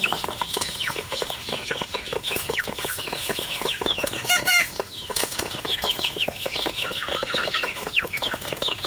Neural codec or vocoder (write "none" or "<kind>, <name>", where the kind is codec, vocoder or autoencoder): autoencoder, DAC-VAE